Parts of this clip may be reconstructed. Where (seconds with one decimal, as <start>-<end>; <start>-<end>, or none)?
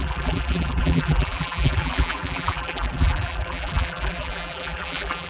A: 0.0-5.3